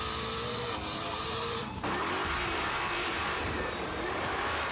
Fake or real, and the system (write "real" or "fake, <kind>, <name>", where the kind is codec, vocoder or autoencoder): fake, vocoder, BigVGAN v2